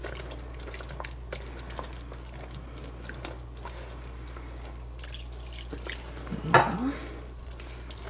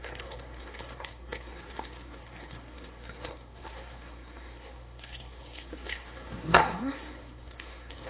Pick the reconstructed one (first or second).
second